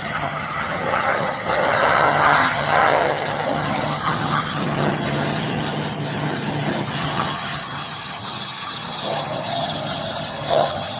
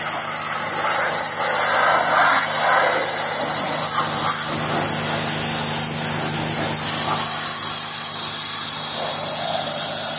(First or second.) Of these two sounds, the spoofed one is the first